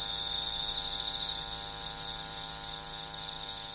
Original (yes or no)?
yes